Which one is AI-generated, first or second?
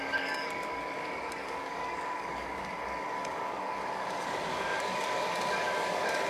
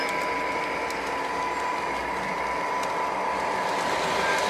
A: first